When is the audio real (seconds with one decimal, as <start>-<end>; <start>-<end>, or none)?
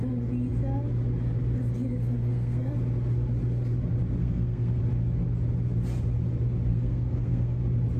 0.0-2.0; 2.7-4.2; 4.8-6.7; 7.6-8.0